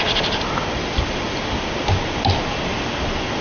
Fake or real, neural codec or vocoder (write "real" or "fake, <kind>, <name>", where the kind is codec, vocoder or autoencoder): real